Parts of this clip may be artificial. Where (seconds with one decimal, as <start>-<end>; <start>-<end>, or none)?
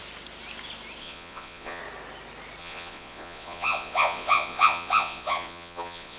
1.0-1.8; 2.6-6.2